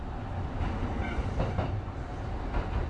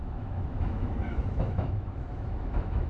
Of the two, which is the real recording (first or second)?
first